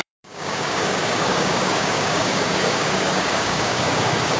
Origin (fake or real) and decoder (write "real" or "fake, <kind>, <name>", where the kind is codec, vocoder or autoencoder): fake, codec, DAC